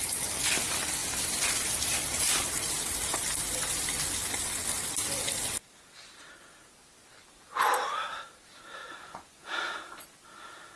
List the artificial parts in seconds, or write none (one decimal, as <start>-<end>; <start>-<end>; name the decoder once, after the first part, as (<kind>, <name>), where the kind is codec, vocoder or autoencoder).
8.8-9.8 (vocoder, Vocos)